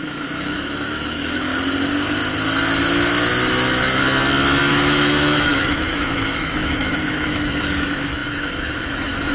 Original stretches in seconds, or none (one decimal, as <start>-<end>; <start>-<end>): 1.5-4.7